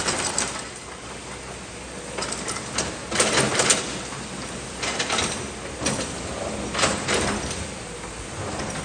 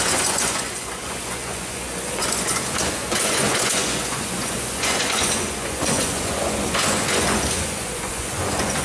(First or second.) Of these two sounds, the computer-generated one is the second